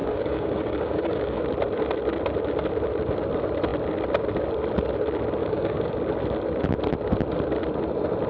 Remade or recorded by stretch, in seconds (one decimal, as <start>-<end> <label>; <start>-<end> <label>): 0.0-1.4 remade; 1.4-5.4 recorded; 5.4-5.9 remade; 5.9-8.3 recorded